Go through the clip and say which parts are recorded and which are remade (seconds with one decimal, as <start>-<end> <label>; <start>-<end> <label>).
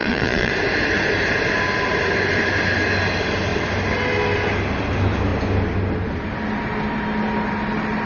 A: 0.0-0.5 remade; 0.5-8.1 recorded